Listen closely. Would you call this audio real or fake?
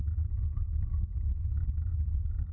fake